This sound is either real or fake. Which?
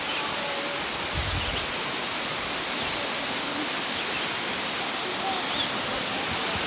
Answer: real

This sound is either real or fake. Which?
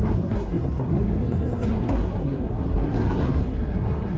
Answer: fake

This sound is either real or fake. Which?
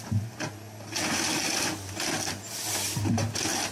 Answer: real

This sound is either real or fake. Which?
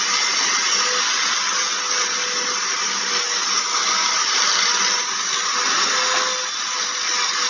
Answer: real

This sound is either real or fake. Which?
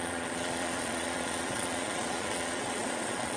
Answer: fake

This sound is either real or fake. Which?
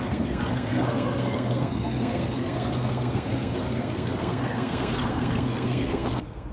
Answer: fake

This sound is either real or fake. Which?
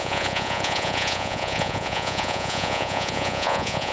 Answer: fake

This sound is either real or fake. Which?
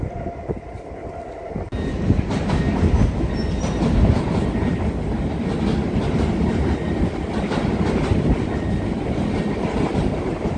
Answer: real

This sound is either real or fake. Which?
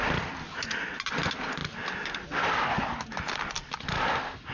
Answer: real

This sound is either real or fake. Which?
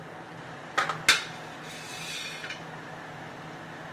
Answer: real